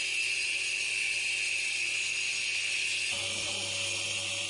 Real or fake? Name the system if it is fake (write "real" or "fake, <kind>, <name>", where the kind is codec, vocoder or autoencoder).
real